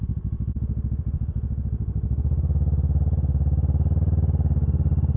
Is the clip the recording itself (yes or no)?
yes